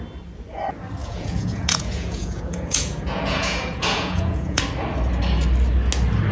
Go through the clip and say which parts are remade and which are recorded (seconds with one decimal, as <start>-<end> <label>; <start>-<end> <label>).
0.0-1.0 recorded; 1.0-4.6 remade; 4.6-6.3 recorded

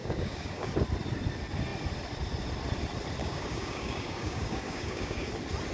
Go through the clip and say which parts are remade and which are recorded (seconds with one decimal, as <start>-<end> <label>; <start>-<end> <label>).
0.0-0.7 remade; 0.7-3.2 recorded; 3.2-5.3 remade; 5.3-5.7 recorded

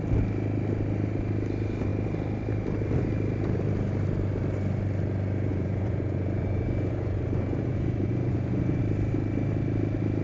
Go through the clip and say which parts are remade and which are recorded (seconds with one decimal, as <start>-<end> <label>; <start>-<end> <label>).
0.0-5.5 recorded; 5.5-8.8 remade; 8.8-10.2 recorded

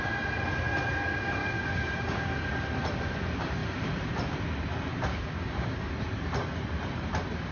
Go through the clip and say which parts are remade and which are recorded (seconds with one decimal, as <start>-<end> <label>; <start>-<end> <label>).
0.0-1.4 recorded; 1.4-2.3 remade; 2.3-5.1 recorded; 5.1-5.9 remade; 5.9-7.5 recorded